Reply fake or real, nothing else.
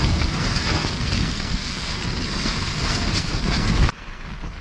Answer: fake